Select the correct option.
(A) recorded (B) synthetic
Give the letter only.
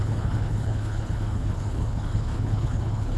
B